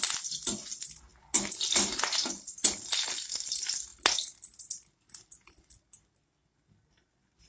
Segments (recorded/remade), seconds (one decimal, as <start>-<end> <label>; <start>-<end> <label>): 0.0-7.5 recorded